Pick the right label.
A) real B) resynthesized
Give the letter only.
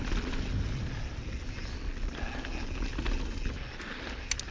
A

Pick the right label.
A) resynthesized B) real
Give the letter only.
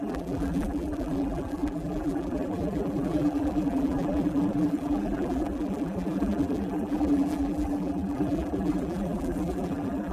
A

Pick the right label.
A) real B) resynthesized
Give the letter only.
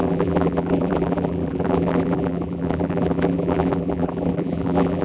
B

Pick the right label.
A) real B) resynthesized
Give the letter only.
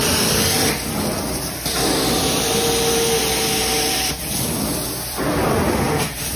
B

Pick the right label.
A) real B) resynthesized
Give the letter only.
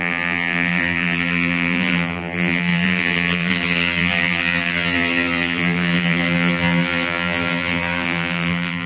B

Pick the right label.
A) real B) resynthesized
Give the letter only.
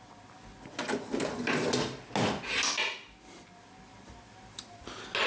A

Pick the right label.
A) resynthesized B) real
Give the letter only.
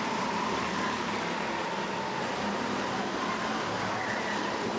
B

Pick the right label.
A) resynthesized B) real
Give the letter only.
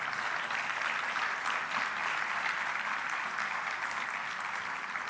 B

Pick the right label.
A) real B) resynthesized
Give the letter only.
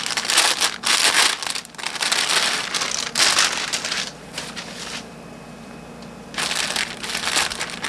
A